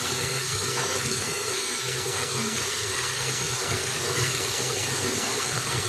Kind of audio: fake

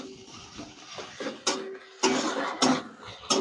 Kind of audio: real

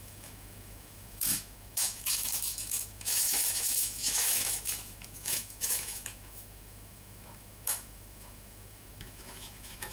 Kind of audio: fake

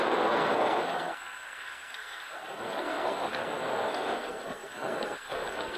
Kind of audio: fake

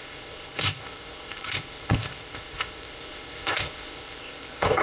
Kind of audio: fake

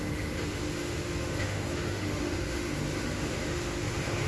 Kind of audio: fake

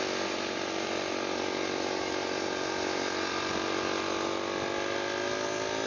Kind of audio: real